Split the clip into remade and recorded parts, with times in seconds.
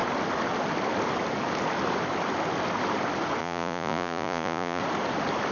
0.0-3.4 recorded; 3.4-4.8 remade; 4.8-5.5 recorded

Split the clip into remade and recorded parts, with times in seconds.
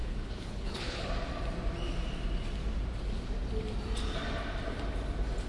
0.0-1.1 remade; 1.1-5.5 recorded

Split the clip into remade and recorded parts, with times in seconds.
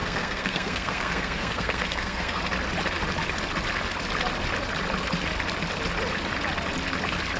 0.0-2.4 remade; 2.4-7.4 recorded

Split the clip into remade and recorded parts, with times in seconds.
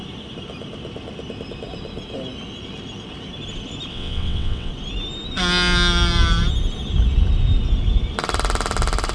0.0-3.9 recorded; 3.9-4.7 remade; 4.7-9.1 recorded